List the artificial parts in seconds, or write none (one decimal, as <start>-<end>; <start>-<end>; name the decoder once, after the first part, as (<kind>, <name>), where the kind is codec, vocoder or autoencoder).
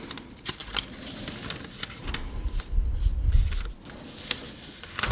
none